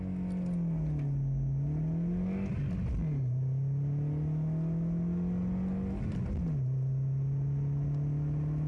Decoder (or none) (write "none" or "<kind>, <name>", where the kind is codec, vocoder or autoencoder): none